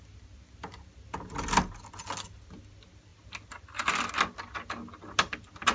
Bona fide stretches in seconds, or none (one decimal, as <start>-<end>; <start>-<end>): 0.0-5.7